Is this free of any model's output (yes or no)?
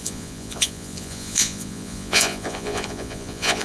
no